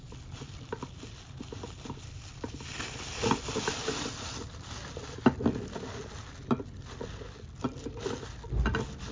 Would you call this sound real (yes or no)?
yes